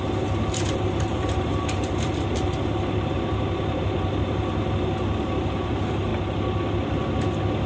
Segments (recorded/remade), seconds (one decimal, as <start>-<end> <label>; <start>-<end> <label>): 0.0-6.1 remade; 6.1-7.7 recorded